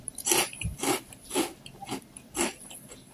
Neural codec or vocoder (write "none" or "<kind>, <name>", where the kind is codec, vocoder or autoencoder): none